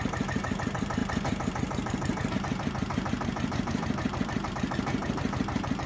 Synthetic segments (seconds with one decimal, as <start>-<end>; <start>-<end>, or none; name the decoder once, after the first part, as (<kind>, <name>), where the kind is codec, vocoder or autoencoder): 0.0-5.9 (vocoder, BigVGAN v2)